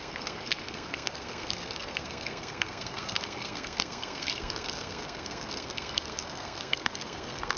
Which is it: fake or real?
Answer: fake